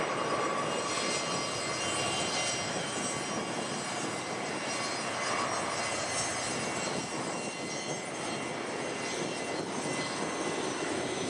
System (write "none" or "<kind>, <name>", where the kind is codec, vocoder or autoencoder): none